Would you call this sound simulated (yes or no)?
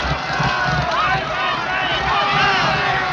no